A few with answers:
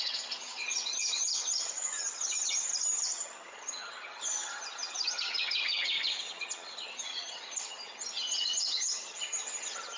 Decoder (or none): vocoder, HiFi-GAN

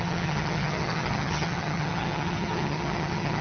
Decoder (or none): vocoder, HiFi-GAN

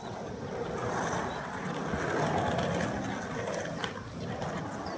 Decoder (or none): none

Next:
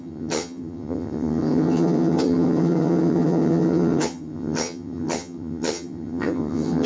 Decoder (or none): vocoder, HiFi-GAN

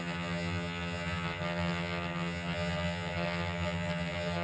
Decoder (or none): vocoder, HiFi-GAN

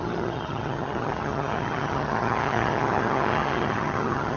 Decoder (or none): vocoder, HiFi-GAN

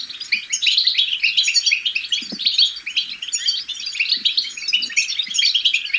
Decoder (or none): none